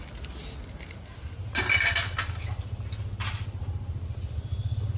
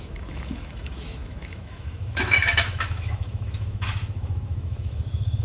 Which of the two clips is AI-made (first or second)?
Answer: second